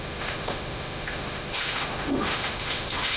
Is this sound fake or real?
fake